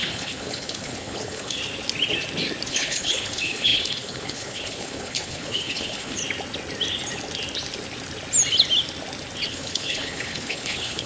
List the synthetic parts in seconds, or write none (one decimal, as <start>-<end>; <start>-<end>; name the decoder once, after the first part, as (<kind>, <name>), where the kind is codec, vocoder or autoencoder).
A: 0.0-1.6 (codec, HILCodec); 2.7-6.2; 9.5-11.1